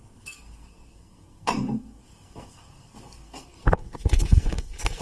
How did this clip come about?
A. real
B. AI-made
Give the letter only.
B